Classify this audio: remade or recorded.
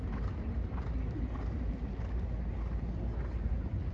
recorded